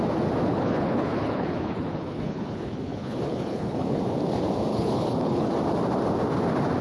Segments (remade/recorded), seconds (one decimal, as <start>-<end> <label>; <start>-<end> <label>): 0.0-0.5 recorded; 0.5-4.0 remade; 4.0-4.7 recorded; 4.7-5.5 remade; 5.5-6.8 recorded